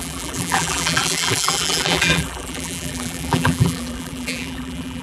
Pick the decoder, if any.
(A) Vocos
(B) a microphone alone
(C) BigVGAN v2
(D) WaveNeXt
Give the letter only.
C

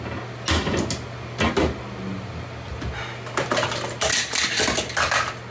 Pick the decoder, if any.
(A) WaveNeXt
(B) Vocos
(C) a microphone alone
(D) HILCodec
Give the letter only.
C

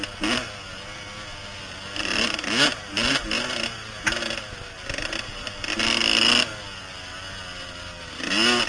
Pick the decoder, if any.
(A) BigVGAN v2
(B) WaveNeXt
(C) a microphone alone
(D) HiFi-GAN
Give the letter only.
C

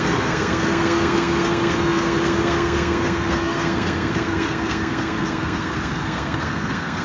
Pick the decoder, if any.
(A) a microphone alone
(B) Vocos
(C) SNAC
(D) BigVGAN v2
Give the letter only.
C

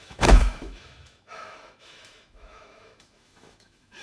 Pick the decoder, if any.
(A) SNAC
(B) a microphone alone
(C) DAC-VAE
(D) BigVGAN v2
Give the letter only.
C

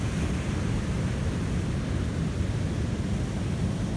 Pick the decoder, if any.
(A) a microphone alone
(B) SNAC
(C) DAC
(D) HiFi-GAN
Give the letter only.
A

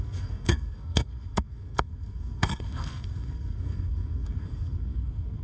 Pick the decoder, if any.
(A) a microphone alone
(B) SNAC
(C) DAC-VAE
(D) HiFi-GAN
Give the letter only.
B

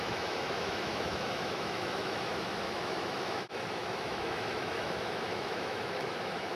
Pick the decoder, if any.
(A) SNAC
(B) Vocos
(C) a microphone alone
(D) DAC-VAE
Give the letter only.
D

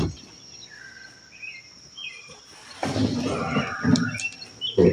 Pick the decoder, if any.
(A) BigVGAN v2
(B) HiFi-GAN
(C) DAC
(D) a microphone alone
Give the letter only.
D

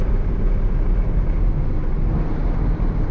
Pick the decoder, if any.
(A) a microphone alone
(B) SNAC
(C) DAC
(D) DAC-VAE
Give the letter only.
A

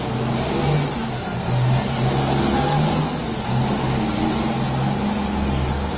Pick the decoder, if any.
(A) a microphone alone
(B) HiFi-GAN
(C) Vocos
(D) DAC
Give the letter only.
A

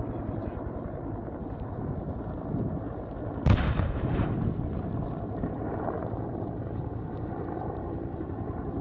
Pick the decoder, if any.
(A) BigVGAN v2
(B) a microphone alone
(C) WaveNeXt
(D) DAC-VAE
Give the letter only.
A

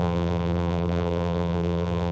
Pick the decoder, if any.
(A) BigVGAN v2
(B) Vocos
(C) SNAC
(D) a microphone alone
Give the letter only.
A